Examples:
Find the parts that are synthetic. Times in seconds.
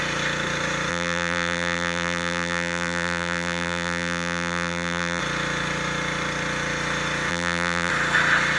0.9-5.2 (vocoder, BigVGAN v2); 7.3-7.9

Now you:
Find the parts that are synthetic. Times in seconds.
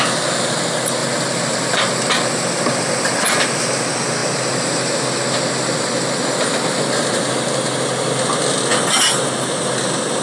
1.0-3.7 (vocoder, BigVGAN v2)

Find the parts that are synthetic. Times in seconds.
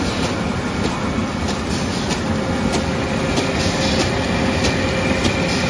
1.2-1.7 (vocoder, BigVGAN v2)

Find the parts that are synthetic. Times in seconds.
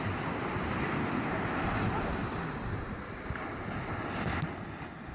2.2-3.7 (vocoder, BigVGAN v2)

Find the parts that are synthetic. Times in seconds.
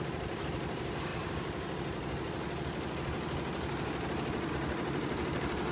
0.0-5.7 (vocoder, BigVGAN v2)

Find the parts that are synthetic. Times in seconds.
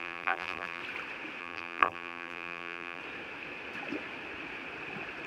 0.0-0.8 (vocoder, BigVGAN v2); 1.4-3.0